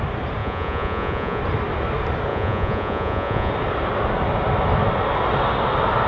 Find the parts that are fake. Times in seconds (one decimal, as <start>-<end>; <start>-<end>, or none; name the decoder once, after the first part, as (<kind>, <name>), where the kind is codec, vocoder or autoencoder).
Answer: 0.4-1.4 (vocoder, Vocos); 2.3-3.5